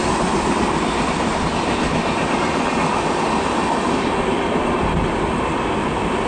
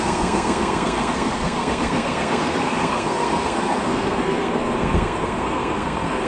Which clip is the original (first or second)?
first